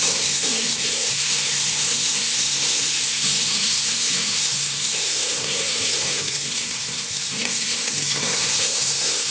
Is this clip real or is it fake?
fake